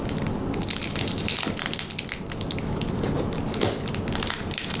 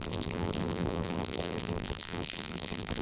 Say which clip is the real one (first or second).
first